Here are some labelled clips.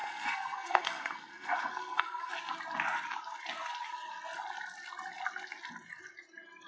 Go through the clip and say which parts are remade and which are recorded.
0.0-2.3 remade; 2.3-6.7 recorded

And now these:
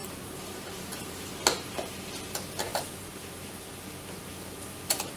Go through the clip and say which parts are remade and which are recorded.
0.0-1.3 remade; 1.3-2.7 recorded; 2.7-3.5 remade; 3.5-5.2 recorded

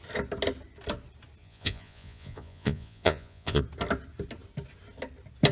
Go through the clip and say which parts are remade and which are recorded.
0.0-1.4 recorded; 1.4-3.6 remade; 3.6-5.5 recorded

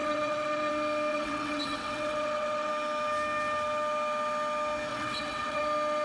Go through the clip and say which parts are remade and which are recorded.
0.0-0.7 remade; 0.7-1.1 recorded; 1.1-2.7 remade; 2.7-4.9 recorded; 4.9-5.6 remade; 5.6-6.0 recorded

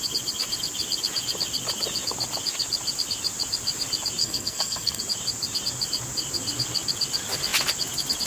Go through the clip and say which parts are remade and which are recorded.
0.0-4.2 recorded; 4.2-5.0 remade; 5.0-8.3 recorded

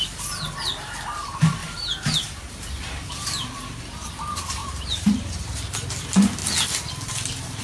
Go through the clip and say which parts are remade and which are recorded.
0.0-1.6 recorded; 1.6-2.4 remade; 2.4-4.6 recorded; 4.6-6.0 remade; 6.0-7.6 recorded